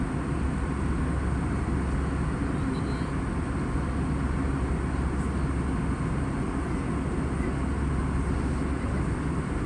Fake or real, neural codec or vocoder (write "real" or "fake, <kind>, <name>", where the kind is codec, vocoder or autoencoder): real